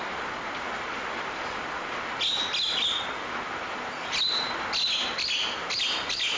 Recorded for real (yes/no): yes